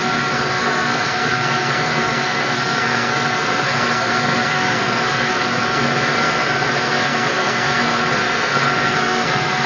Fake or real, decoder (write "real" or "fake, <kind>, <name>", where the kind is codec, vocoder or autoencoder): fake, codec, SNAC